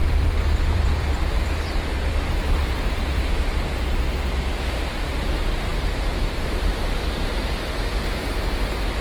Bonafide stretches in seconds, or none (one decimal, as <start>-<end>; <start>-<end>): 2.9-9.0